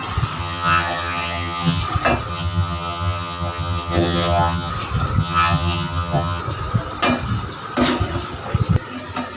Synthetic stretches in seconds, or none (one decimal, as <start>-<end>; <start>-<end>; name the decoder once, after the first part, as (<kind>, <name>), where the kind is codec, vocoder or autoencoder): 0.4-1.8 (vocoder, HiFi-GAN); 2.3-4.7; 5.2-6.4